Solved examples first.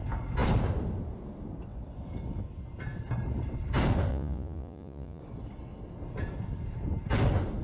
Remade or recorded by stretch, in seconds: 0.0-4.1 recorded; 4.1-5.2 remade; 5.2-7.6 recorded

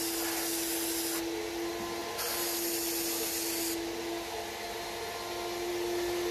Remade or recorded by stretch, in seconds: 0.0-6.3 recorded